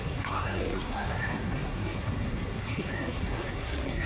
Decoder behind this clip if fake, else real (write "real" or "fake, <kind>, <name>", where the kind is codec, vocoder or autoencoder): fake, codec, SNAC